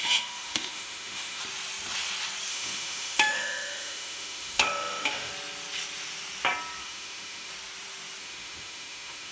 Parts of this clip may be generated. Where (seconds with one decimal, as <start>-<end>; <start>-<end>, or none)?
0.0-1.4; 2.5-5.3; 6.8-7.5; 8.2-9.3